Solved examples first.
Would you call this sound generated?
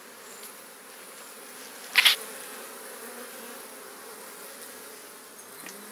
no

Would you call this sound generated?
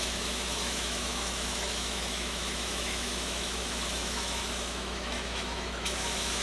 yes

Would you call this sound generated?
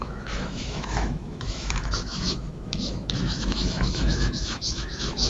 yes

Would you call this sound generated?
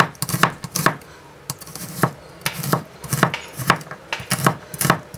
no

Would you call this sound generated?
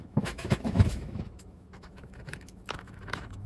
yes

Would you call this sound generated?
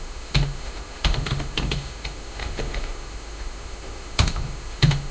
yes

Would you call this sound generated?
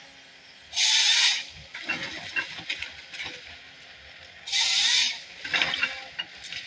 no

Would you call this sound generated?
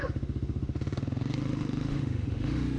yes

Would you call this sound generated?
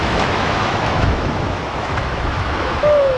yes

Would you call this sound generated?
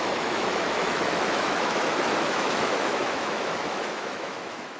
yes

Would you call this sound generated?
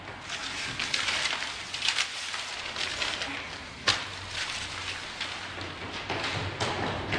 no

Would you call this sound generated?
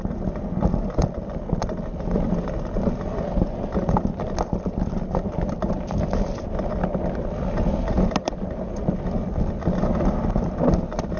no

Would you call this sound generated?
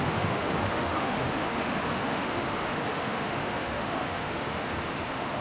yes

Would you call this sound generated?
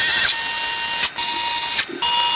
no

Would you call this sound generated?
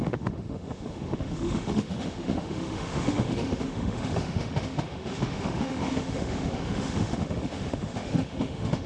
yes